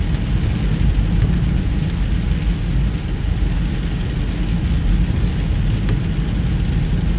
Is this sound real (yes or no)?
yes